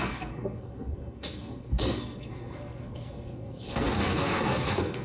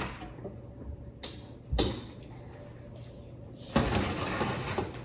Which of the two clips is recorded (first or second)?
second